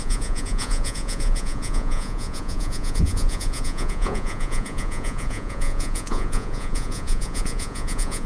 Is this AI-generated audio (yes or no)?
yes